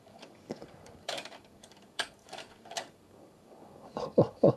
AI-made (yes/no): yes